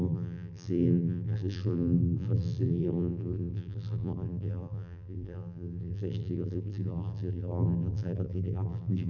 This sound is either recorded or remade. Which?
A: remade